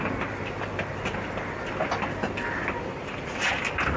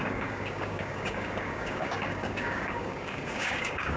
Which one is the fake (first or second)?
second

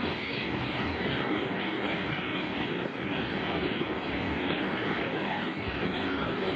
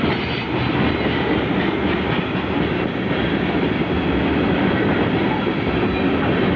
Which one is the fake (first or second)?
first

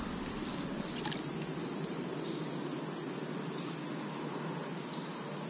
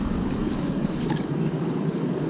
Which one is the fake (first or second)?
second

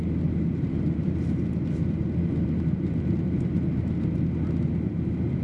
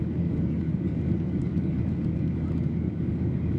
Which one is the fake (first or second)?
second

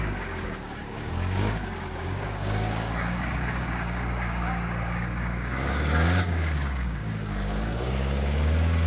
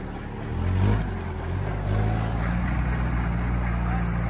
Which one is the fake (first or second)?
first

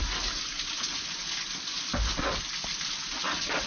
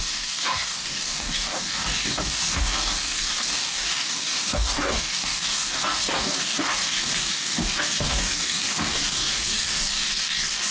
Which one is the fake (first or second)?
second